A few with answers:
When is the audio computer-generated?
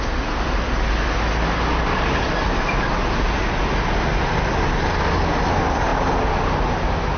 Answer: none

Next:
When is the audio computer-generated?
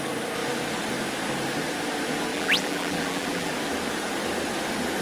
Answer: 2.3-3.5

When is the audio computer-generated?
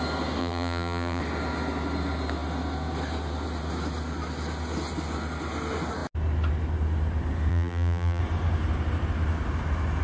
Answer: 0.4-1.2; 7.5-8.2